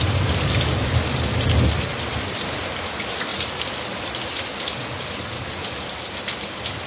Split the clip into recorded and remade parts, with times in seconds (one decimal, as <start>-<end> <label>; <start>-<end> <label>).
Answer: 0.0-6.9 recorded